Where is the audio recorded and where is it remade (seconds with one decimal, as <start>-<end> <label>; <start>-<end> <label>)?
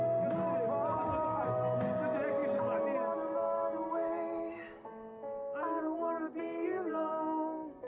0.0-7.9 recorded